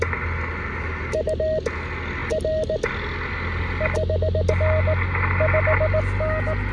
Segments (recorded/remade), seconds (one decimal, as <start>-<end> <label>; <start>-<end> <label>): 0.0-6.7 recorded